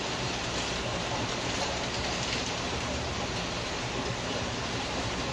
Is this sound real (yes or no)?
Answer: no